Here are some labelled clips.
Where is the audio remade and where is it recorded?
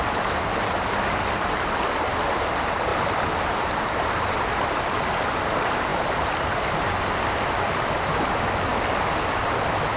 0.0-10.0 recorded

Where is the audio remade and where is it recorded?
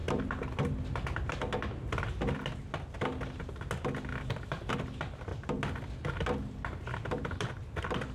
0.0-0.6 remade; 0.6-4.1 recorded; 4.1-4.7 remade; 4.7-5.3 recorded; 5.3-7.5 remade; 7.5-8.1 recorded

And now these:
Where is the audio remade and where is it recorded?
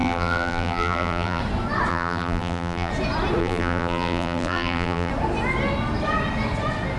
0.0-1.4 remade; 1.4-1.9 recorded; 1.9-2.9 remade; 2.9-3.4 recorded; 3.4-5.1 remade; 5.1-7.0 recorded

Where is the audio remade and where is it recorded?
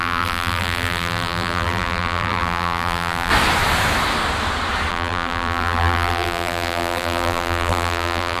0.0-3.3 remade; 3.3-4.9 recorded; 4.9-8.4 remade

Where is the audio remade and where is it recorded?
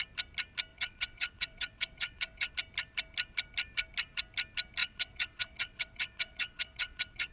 0.0-0.7 recorded; 0.7-2.5 remade; 2.5-4.8 recorded; 4.8-7.3 remade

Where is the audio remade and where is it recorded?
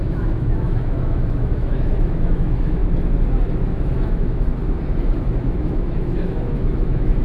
0.0-2.8 remade; 2.8-3.7 recorded; 3.7-4.5 remade; 4.5-5.2 recorded; 5.2-7.2 remade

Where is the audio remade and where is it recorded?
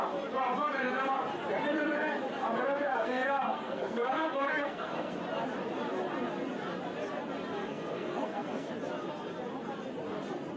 0.0-2.9 recorded; 2.9-5.2 remade; 5.2-7.6 recorded; 7.6-8.7 remade; 8.7-10.6 recorded